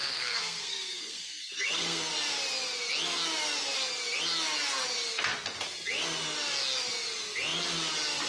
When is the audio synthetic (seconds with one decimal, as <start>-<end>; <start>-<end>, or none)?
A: 0.0-2.1